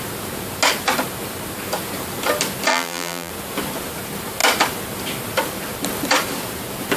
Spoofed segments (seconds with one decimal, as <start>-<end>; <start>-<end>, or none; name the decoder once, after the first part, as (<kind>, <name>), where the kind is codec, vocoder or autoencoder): 2.7-3.3 (vocoder, BigVGAN v2)